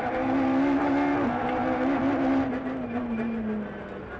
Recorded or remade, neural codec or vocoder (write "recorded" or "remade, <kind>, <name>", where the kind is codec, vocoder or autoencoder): recorded